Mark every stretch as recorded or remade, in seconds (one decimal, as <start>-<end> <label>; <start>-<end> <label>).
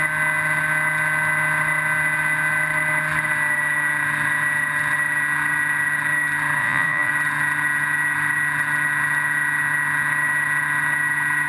0.0-6.6 recorded; 6.6-7.1 remade; 7.1-11.5 recorded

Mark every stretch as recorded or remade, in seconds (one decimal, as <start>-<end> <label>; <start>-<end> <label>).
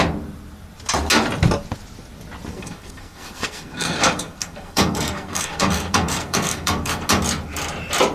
0.0-2.5 recorded; 2.5-7.1 remade; 7.1-8.1 recorded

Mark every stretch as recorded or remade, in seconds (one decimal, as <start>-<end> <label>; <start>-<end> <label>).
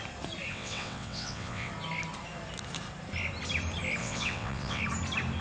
0.0-0.5 recorded; 0.5-1.7 remade; 1.7-4.0 recorded; 4.0-4.8 remade; 4.8-5.4 recorded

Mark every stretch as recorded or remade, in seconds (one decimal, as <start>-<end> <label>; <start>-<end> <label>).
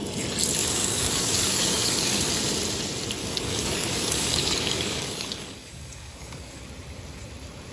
0.0-0.6 recorded; 0.6-2.3 remade; 2.3-3.2 recorded; 3.2-6.6 remade; 6.6-7.7 recorded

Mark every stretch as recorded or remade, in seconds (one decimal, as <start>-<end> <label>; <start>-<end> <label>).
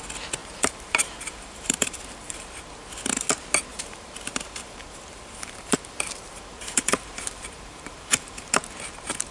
0.0-0.4 recorded; 0.4-2.7 remade; 2.7-3.7 recorded; 3.7-8.5 remade; 8.5-9.3 recorded